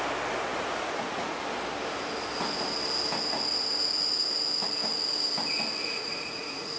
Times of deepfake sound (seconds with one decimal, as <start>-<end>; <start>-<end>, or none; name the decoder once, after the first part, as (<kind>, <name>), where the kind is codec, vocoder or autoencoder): 0.5-1.4 (vocoder, Vocos); 5.8-6.8